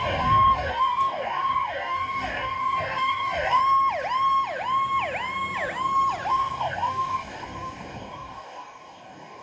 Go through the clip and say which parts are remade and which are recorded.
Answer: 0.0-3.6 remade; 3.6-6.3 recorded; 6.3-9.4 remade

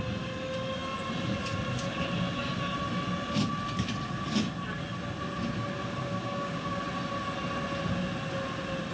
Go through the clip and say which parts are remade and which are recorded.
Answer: 0.0-6.0 recorded; 6.0-6.8 remade; 6.8-8.9 recorded

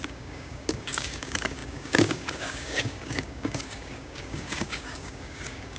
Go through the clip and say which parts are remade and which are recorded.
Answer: 0.0-5.8 remade